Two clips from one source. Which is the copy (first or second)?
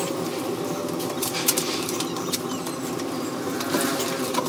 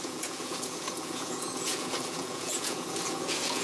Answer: second